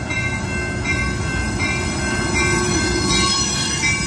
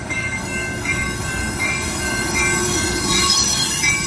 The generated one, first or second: second